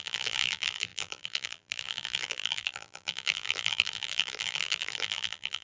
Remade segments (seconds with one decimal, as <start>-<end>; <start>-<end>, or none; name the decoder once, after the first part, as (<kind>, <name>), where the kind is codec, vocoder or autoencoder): 0.0-5.6 (vocoder, BigVGAN v2)

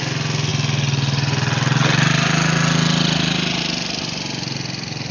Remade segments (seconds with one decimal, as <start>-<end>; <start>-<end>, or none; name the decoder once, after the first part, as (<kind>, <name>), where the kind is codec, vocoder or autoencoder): none

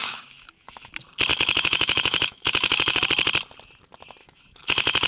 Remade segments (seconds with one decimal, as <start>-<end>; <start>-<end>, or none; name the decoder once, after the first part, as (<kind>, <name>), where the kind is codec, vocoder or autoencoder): 0.0-0.9 (autoencoder, DAC-VAE); 1.3-3.0; 4.2-5.1

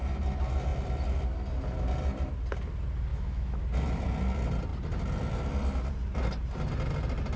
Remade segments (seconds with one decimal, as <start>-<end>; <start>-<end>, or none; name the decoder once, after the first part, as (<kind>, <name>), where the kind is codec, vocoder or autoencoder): 3.1-3.6 (autoencoder, DAC-VAE)

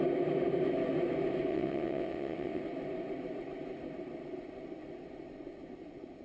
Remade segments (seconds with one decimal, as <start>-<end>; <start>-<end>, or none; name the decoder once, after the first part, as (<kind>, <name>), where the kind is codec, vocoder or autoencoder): 1.5-2.6 (vocoder, WaveNeXt)

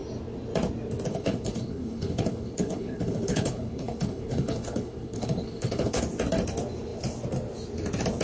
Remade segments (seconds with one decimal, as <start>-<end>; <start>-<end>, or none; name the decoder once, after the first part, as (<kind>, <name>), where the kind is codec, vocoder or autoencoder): 1.1-6.0 (codec, HILCodec)

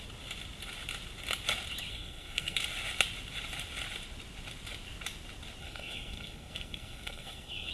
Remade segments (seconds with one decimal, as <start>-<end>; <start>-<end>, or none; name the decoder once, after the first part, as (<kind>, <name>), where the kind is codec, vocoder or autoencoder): 1.9-2.6 (codec, SNAC); 5.6-7.7

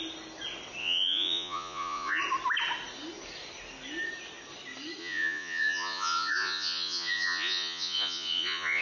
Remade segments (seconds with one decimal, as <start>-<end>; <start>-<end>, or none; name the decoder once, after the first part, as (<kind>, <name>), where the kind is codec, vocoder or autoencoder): 0.8-2.2 (vocoder, Vocos); 5.0-8.8